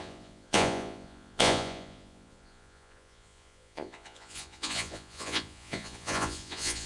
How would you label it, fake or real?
fake